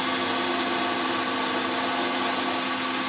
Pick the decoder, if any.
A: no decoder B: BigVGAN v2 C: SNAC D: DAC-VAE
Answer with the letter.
A